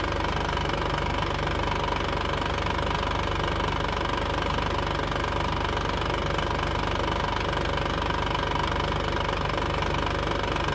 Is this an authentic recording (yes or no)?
yes